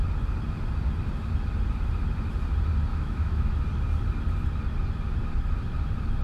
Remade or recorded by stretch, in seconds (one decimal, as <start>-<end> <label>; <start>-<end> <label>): 0.0-2.9 recorded; 2.9-3.6 remade; 3.6-6.2 recorded